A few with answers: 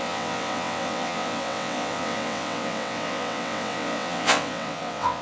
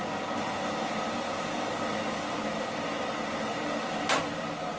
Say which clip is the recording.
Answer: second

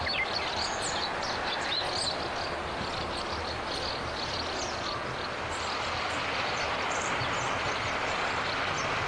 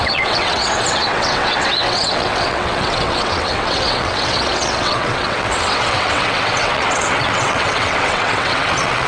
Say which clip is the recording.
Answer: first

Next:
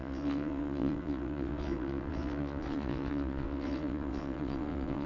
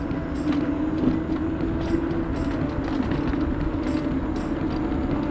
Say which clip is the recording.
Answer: second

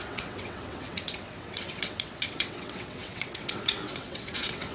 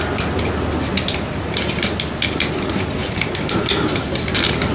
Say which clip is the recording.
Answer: second